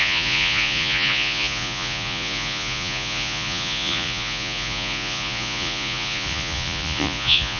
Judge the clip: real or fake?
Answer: fake